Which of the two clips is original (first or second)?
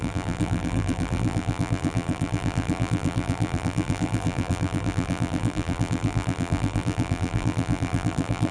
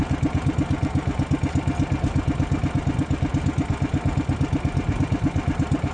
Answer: second